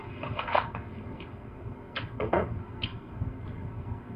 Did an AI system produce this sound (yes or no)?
yes